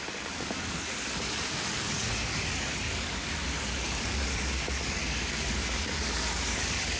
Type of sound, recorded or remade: remade